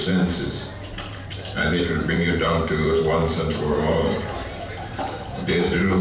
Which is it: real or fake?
fake